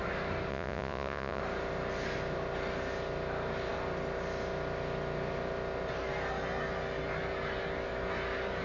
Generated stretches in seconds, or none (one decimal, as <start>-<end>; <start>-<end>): 0.5-1.4